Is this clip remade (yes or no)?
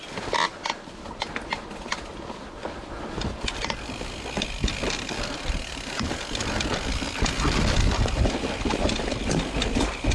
no